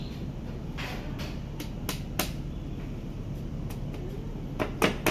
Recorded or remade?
recorded